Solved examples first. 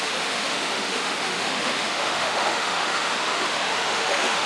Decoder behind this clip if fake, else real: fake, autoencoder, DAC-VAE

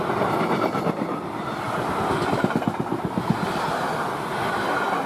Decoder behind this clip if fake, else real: real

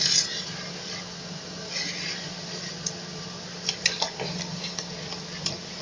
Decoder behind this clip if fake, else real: real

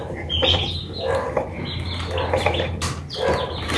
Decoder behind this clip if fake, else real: real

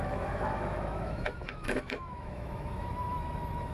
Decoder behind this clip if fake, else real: fake, autoencoder, DAC-VAE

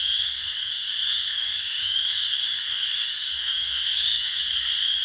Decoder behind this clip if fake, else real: fake, autoencoder, DAC-VAE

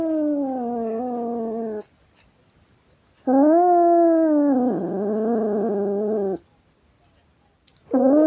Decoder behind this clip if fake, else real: real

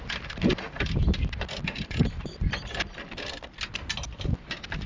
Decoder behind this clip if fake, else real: real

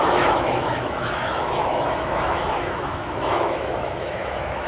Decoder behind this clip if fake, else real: fake, autoencoder, DAC-VAE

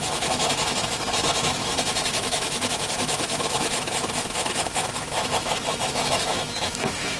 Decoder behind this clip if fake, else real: fake, autoencoder, DAC-VAE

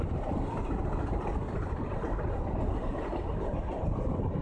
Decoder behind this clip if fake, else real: real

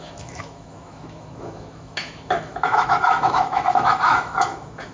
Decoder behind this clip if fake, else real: fake, autoencoder, DAC-VAE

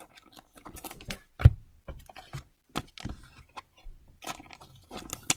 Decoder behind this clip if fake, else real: real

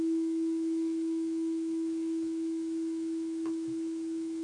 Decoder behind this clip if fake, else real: fake, autoencoder, DAC-VAE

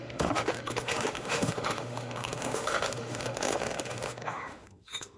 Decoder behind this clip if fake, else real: fake, autoencoder, DAC-VAE